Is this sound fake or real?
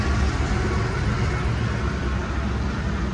real